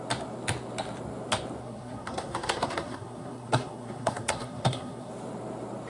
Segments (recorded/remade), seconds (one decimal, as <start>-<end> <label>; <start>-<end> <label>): 0.0-1.6 recorded; 1.6-5.1 remade; 5.1-5.9 recorded